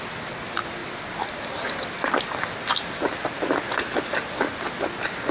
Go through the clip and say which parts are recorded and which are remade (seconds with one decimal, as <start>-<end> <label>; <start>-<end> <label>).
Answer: 0.0-5.3 recorded